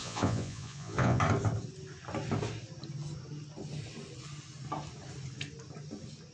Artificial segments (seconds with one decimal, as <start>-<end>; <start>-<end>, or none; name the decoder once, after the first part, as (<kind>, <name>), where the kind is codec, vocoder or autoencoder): 0.0-1.2 (vocoder, Vocos)